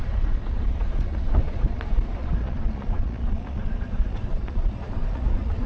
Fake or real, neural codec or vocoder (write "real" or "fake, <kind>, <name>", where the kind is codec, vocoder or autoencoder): fake, vocoder, Vocos